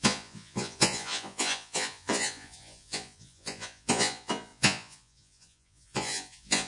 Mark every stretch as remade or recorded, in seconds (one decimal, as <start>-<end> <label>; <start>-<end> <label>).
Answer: 0.0-6.7 remade